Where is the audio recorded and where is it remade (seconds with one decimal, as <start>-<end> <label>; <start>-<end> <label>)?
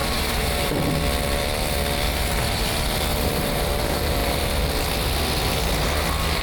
0.0-0.7 remade; 0.7-3.1 recorded; 3.1-3.6 remade; 3.6-6.4 recorded